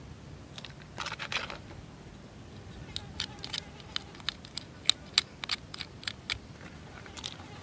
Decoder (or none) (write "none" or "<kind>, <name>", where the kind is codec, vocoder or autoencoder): none